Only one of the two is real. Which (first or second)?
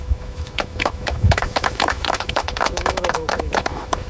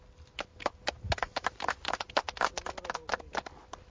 second